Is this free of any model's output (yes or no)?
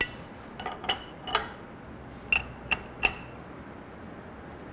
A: yes